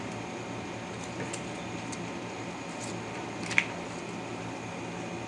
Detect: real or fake real